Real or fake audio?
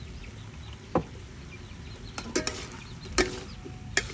real